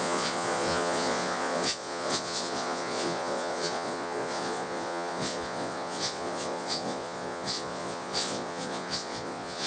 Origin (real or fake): fake